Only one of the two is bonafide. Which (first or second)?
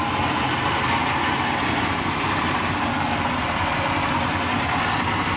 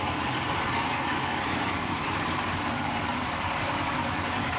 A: first